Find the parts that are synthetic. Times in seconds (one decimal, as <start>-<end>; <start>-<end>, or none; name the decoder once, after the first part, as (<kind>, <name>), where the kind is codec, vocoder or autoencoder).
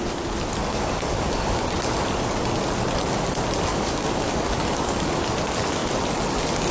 0.7-1.6 (codec, DAC); 3.7-5.1